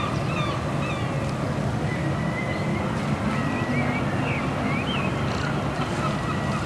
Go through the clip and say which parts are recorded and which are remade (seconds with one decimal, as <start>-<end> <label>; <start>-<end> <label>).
0.0-6.7 recorded